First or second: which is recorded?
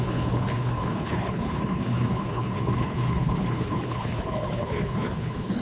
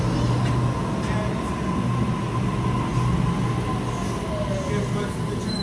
second